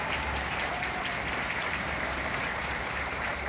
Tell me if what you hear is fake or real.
fake